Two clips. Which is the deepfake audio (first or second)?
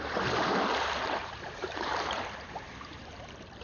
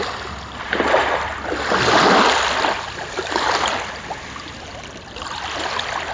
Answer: first